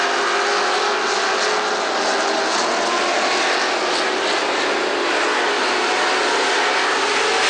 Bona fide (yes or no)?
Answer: yes